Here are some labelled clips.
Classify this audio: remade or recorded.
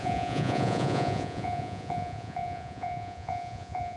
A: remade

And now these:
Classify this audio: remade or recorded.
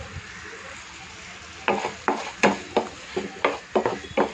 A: recorded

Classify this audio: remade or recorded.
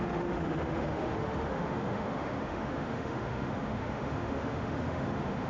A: remade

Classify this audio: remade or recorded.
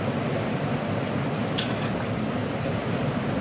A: recorded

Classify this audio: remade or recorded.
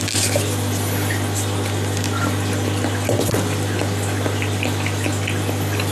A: recorded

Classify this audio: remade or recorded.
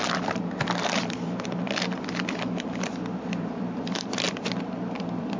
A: remade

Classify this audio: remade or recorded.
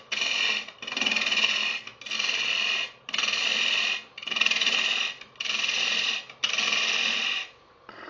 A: recorded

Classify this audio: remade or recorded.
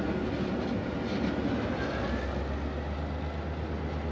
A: recorded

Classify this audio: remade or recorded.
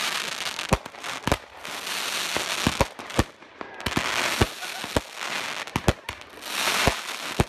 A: recorded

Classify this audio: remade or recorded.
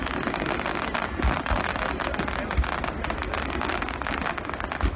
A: recorded